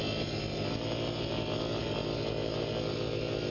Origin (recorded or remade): recorded